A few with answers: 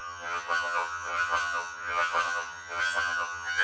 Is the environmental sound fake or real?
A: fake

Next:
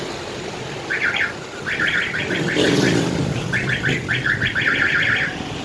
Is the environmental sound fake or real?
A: real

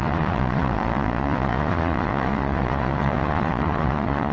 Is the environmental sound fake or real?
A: fake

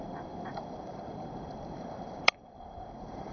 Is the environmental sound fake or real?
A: fake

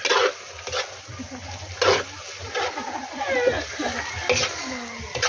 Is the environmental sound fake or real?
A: real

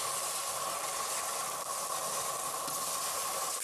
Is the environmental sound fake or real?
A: real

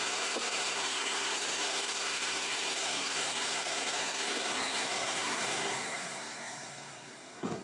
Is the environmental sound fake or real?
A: fake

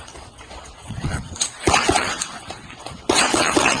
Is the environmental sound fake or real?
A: fake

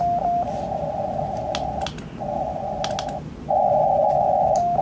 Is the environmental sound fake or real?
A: real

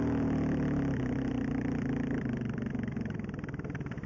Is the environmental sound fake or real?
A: real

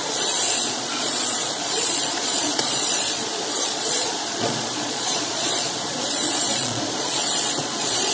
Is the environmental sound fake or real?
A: fake